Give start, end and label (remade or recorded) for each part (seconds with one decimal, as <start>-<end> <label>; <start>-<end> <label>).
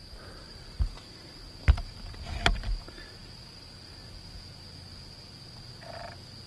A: 0.0-2.3 remade; 2.3-6.5 recorded